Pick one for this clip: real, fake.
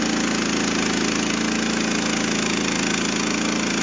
real